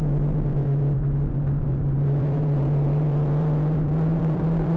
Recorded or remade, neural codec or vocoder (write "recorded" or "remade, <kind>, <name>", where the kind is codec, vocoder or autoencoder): remade, vocoder, BigVGAN v2